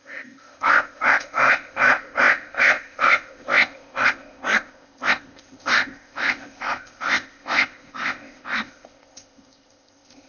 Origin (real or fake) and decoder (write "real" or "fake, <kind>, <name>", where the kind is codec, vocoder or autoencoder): fake, codec, ZipCodec